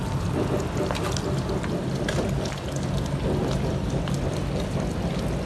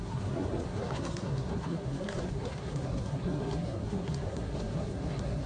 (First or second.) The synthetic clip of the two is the second